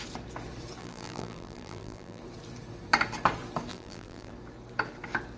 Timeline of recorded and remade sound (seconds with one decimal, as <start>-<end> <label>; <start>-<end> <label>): 0.0-0.8 recorded; 0.8-2.2 remade; 2.2-3.7 recorded; 3.7-4.3 remade; 4.3-5.4 recorded